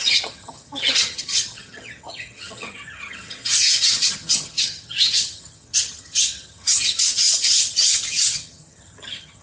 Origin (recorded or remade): remade